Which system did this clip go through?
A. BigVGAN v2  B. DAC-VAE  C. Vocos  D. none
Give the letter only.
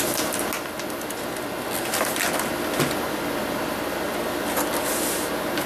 D